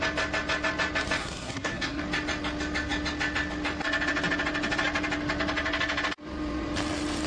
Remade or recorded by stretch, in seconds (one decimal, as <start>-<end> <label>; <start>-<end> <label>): 0.0-1.2 recorded; 1.2-2.0 remade; 2.0-7.3 recorded